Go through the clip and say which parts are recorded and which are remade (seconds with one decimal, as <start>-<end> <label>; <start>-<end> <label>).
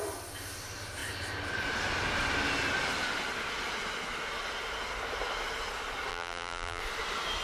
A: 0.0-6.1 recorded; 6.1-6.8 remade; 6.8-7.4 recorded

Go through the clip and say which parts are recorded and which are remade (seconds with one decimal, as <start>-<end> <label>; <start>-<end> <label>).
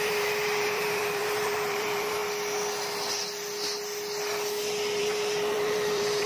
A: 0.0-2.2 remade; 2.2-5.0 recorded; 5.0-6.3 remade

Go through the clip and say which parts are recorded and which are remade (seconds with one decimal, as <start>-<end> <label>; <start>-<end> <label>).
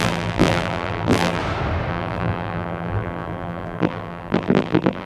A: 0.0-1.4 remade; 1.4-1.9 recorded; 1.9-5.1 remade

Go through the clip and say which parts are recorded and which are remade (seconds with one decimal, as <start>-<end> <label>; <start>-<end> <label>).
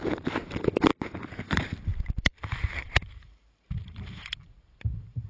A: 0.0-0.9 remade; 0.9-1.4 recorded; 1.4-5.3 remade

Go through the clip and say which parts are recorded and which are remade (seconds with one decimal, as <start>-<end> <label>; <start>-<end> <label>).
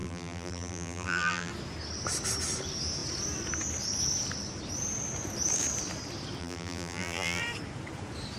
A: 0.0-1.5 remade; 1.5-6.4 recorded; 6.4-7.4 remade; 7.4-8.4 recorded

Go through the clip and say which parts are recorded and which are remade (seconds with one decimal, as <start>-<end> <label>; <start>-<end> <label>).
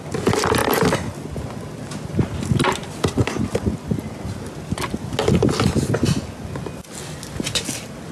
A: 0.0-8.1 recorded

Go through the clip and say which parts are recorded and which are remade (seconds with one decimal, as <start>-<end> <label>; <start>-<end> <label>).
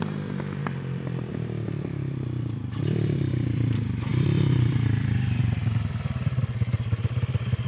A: 0.0-0.6 recorded; 0.6-1.3 remade; 1.3-4.1 recorded; 4.1-5.1 remade; 5.1-7.7 recorded